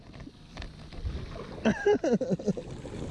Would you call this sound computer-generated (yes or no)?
no